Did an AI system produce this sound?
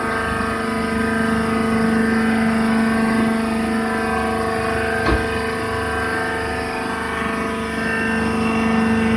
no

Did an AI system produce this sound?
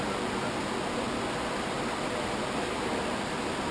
no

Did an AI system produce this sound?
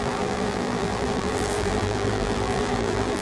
yes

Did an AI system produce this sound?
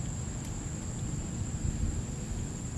no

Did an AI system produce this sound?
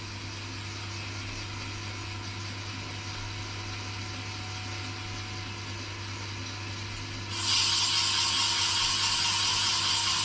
no